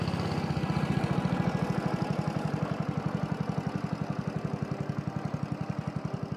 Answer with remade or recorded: recorded